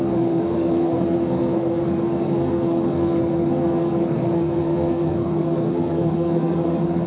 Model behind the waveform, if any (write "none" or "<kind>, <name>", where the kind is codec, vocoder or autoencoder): codec, SNAC